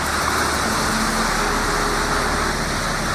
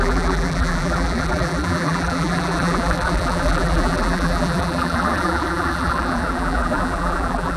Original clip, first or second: first